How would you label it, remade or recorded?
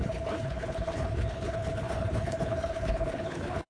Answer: remade